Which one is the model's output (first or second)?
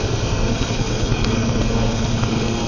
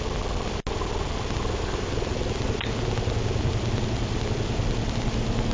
first